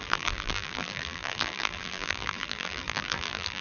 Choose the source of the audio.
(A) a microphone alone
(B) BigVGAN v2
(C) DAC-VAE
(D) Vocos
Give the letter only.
B